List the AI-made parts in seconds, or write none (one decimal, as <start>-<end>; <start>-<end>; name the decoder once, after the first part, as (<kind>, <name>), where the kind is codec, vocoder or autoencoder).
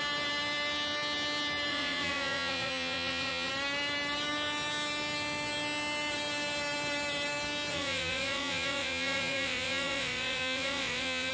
1.7-3.5 (vocoder, Vocos); 7.7-11.3